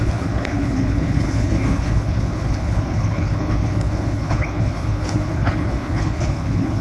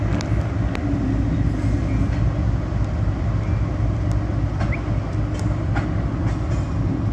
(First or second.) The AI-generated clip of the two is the first